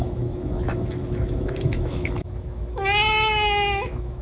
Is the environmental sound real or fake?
fake